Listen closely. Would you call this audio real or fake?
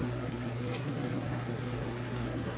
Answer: fake